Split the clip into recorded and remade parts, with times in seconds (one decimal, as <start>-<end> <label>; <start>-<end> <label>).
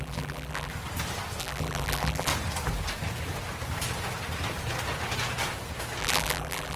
0.0-0.7 remade; 0.7-1.4 recorded; 1.4-2.3 remade; 2.3-6.0 recorded; 6.0-6.8 remade